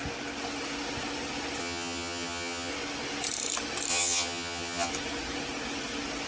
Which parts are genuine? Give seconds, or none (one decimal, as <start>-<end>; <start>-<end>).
0.0-1.6; 2.7-3.9; 4.9-6.3